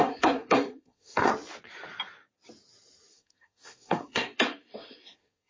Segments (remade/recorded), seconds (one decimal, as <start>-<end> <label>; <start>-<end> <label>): 0.0-1.3 remade; 1.3-3.1 recorded; 3.1-5.5 remade